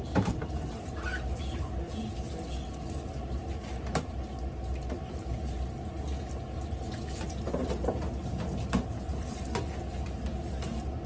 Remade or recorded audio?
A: recorded